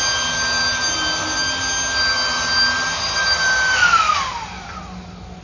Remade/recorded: recorded